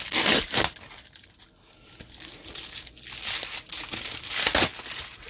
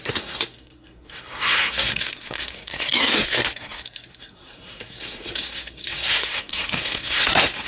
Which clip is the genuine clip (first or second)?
first